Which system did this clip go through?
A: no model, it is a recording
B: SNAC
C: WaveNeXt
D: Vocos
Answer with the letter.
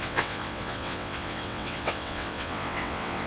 C